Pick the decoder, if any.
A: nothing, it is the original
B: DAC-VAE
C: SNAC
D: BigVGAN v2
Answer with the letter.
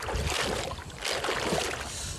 A